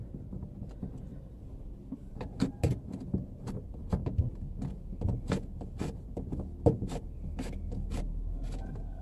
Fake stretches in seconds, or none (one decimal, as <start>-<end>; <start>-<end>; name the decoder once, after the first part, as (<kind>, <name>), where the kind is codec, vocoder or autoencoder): none